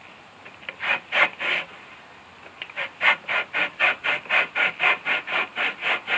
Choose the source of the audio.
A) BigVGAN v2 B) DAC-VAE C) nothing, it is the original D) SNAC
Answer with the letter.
A